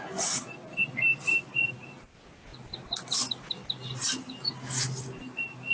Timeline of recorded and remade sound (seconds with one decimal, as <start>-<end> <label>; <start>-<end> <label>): 0.0-5.7 recorded